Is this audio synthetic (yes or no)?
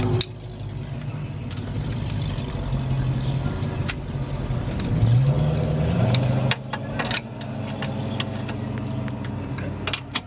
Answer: no